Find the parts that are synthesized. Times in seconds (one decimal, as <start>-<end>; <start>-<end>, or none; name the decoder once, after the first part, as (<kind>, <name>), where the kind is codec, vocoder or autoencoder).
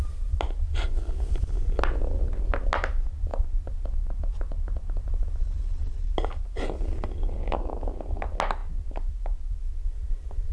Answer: 5.4-6.1 (codec, HILCodec)